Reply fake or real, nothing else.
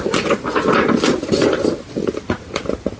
real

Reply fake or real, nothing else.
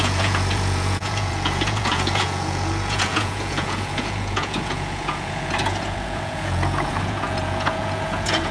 fake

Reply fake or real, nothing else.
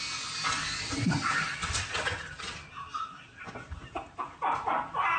real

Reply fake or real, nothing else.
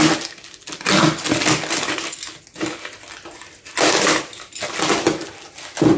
real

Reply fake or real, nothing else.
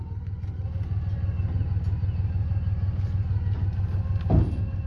real